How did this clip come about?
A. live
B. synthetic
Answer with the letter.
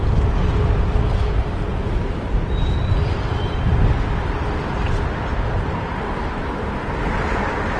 A